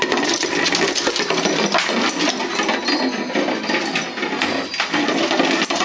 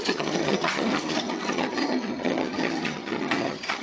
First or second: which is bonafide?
first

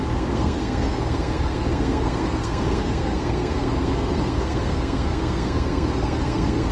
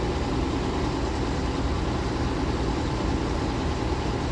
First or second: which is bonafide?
second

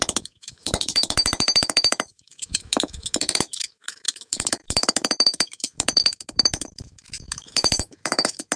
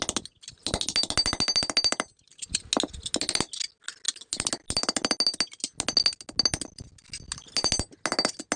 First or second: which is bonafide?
second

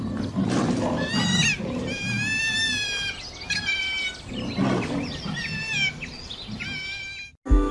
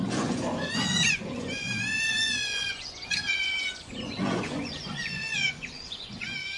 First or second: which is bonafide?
first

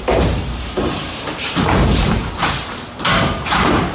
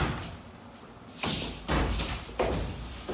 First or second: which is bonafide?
second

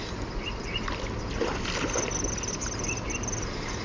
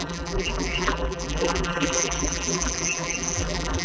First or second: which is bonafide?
first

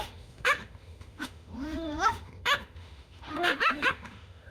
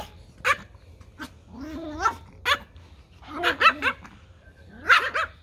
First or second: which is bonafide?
second